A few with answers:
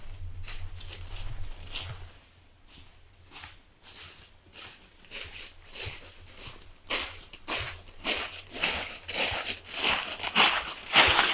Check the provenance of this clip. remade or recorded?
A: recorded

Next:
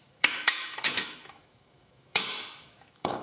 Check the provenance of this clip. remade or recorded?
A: remade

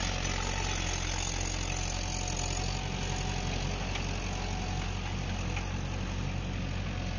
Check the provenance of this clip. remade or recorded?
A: recorded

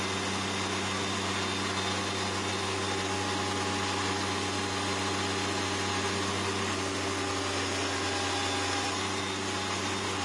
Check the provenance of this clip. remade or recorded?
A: recorded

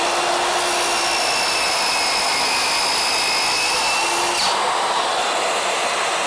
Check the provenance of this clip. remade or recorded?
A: recorded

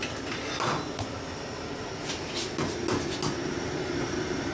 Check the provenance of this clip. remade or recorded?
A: recorded